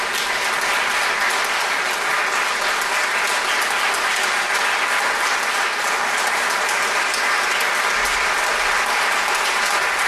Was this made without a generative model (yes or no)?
yes